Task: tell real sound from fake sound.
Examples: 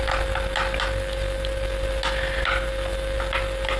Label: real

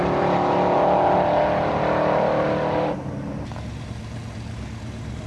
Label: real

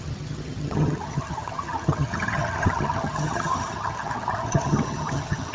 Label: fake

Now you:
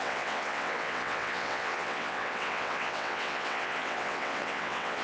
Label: fake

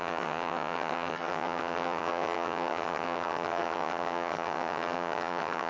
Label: fake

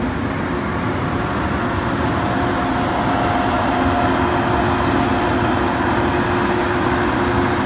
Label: real